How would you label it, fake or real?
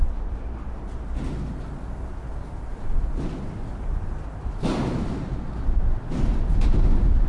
real